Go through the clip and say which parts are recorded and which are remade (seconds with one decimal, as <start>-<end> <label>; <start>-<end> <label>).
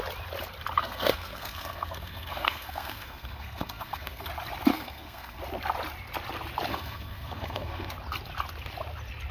0.0-0.8 recorded; 0.8-4.3 remade; 4.3-4.7 recorded; 4.7-5.4 remade; 5.4-6.7 recorded; 6.7-7.9 remade; 7.9-9.3 recorded